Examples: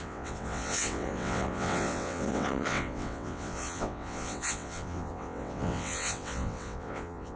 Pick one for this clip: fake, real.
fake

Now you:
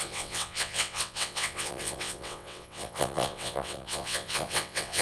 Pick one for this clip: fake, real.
fake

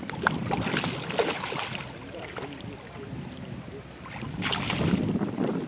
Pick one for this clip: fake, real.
real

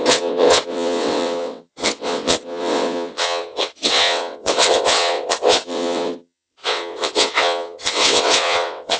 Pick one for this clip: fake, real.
fake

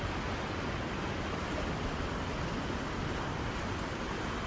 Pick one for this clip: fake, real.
real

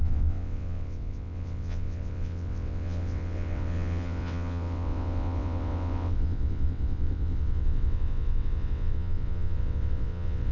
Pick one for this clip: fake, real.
fake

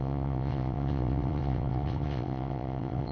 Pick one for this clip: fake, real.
fake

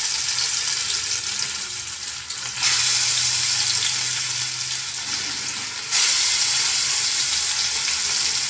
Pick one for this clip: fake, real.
real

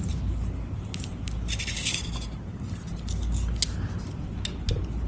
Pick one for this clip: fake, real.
real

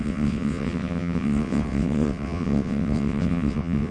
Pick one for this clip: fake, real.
fake